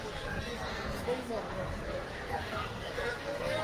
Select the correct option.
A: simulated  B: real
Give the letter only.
A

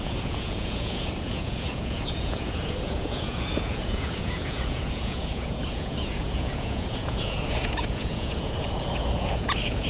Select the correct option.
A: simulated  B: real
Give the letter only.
A